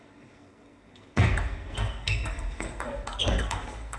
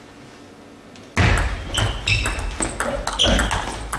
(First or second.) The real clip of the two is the second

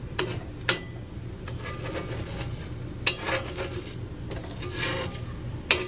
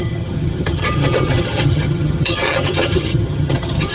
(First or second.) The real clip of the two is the first